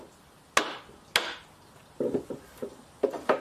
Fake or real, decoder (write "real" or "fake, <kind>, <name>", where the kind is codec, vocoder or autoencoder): real